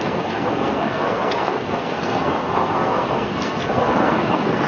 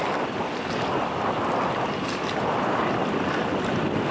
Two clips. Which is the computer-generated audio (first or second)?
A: first